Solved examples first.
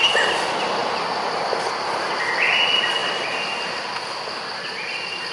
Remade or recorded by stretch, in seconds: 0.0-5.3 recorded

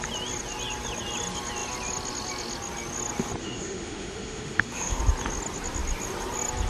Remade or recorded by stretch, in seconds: 0.0-3.4 recorded; 3.4-5.0 remade; 5.0-6.7 recorded